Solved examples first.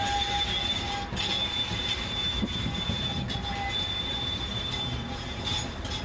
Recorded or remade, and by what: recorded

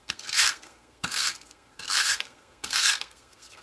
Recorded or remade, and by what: remade, codec, SNAC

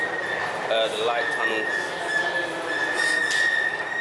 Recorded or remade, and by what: recorded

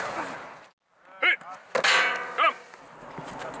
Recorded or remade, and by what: recorded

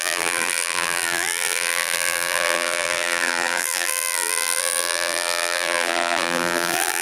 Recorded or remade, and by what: remade, vocoder, BigVGAN v2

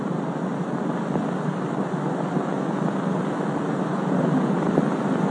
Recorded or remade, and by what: recorded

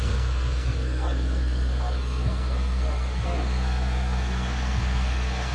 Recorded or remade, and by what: remade, codec, SNAC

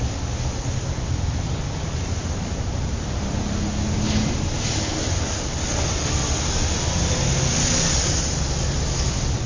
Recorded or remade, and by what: recorded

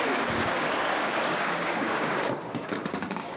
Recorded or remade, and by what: remade, codec, DAC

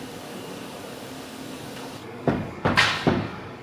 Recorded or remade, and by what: remade, codec, DAC